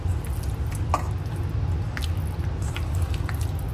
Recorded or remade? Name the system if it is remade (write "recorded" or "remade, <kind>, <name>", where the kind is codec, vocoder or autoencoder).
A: recorded